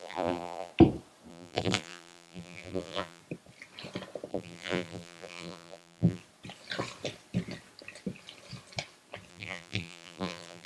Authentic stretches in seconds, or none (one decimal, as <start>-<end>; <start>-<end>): 0.7-1.3; 3.2-4.3; 6.2-9.3